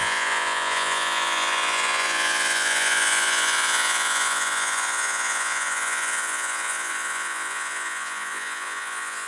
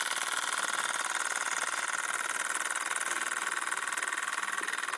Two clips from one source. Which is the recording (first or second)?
second